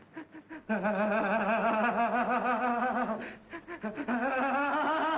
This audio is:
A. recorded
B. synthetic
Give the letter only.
A